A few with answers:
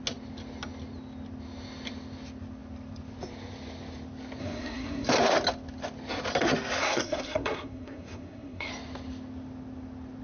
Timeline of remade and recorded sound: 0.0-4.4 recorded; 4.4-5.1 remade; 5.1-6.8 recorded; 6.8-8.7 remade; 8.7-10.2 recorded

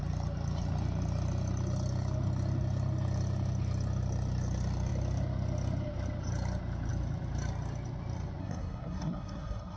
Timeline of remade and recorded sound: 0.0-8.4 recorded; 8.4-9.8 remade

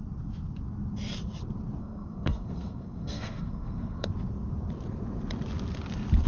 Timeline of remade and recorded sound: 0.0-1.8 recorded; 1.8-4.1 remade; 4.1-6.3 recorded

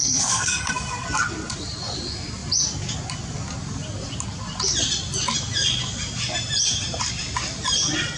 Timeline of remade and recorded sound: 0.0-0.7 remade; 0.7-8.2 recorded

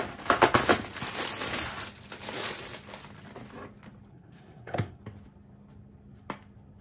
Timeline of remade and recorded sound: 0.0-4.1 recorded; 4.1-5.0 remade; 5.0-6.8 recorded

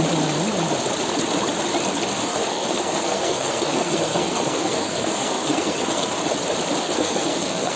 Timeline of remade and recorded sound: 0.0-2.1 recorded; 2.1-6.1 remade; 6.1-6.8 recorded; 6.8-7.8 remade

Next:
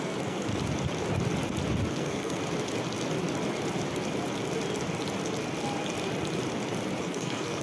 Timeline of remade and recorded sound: 0.0-0.5 remade; 0.5-1.9 recorded; 1.9-2.4 remade; 2.4-7.0 recorded; 7.0-7.6 remade